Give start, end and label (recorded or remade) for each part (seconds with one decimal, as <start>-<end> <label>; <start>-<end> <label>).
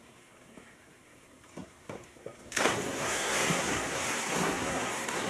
0.0-5.3 remade